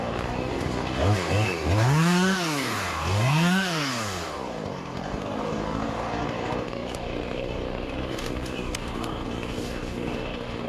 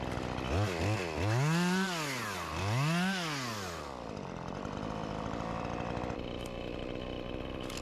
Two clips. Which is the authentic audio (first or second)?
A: second